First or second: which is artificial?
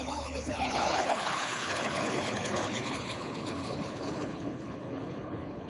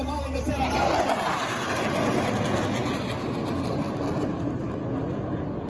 first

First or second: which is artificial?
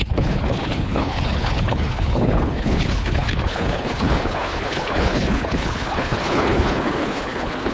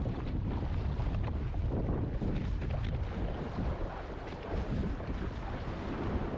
first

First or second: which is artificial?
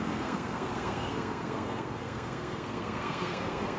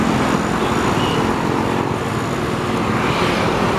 first